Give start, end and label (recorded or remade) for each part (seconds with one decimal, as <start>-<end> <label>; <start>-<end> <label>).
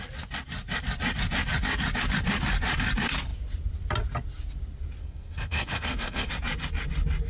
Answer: 0.0-5.0 recorded; 5.0-6.3 remade; 6.3-7.3 recorded